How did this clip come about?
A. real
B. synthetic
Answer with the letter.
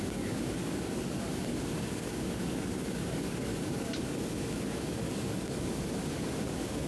B